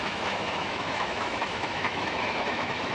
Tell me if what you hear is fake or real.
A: fake